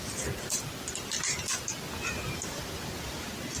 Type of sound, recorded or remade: recorded